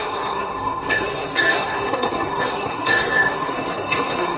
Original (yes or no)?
no